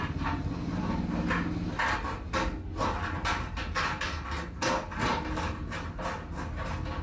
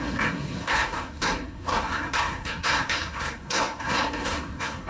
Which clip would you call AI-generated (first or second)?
second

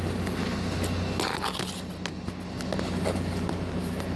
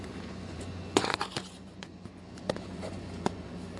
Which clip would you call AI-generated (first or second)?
second